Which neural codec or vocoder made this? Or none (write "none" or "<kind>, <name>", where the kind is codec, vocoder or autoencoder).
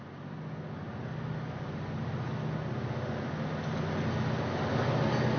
none